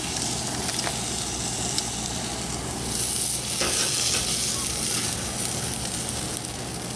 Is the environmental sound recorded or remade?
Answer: recorded